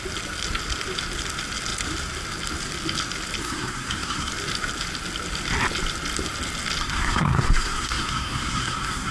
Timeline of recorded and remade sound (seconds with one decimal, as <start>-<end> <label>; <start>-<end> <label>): 0.0-3.4 recorded; 3.4-4.3 remade; 4.3-6.8 recorded; 6.8-9.1 remade

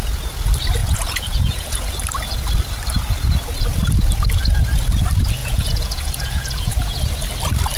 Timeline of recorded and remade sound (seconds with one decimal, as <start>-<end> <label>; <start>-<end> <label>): 0.0-0.8 recorded; 0.8-1.9 remade; 1.9-5.4 recorded; 5.4-7.0 remade; 7.0-7.8 recorded